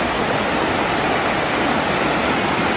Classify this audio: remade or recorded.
recorded